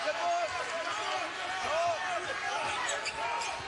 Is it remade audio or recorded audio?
recorded